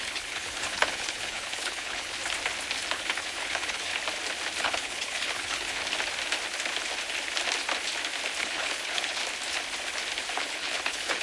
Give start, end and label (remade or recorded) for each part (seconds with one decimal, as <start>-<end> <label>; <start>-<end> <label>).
0.0-2.2 remade; 2.2-2.9 recorded; 2.9-3.9 remade; 3.9-4.6 recorded; 4.6-5.8 remade; 5.8-8.4 recorded; 8.4-9.2 remade; 9.2-10.4 recorded; 10.4-11.2 remade